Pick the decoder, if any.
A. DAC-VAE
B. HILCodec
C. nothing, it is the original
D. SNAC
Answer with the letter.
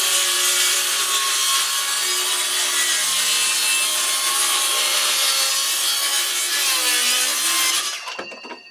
C